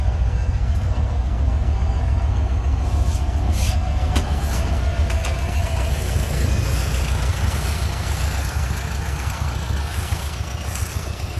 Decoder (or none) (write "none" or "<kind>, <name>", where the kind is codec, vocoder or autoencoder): codec, SNAC